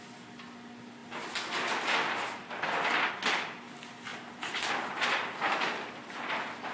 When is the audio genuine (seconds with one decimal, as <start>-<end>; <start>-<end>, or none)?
0.0-4.1; 4.7-6.7